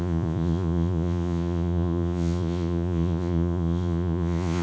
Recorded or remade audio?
remade